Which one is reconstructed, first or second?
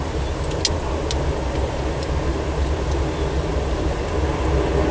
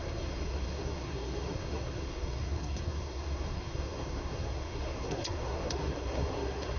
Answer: second